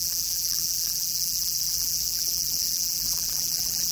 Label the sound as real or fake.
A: fake